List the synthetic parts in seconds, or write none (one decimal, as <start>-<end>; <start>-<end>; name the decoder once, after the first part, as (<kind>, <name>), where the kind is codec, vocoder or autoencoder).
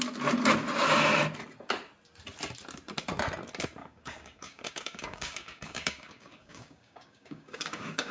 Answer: 3.8-8.1 (codec, DAC)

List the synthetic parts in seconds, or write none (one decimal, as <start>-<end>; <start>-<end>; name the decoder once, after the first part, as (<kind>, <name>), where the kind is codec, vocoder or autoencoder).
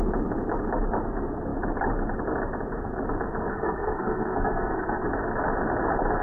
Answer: 3.5-5.1 (codec, SNAC)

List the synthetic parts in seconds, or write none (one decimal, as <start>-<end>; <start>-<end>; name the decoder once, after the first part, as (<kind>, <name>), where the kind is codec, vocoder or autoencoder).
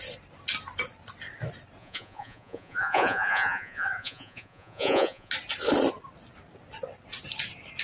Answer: 1.8-5.3 (vocoder, Vocos)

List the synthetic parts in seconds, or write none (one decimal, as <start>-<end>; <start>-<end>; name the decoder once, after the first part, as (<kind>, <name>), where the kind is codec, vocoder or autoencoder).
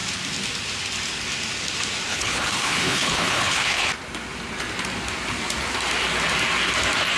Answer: 2.1-3.9 (codec, HILCodec)